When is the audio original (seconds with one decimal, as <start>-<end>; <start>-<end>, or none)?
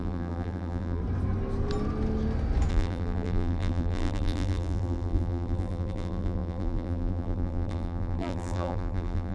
1.0-2.7